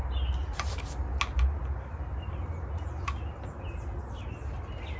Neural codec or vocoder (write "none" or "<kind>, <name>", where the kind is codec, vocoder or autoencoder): none